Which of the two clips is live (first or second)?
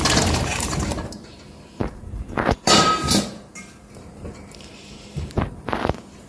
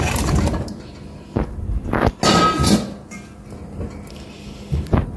second